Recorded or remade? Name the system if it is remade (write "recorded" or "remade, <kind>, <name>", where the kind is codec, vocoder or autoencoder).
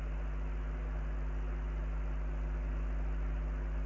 recorded